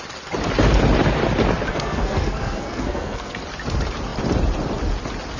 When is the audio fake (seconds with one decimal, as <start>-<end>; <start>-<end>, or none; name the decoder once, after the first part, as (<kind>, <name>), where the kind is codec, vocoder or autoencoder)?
1.7-3.4 (codec, SNAC)